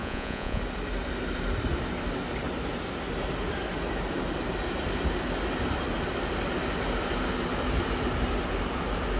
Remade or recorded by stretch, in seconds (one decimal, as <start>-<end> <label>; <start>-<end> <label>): 0.0-0.6 remade; 0.6-9.2 recorded